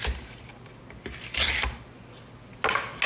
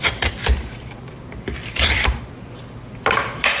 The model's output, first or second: second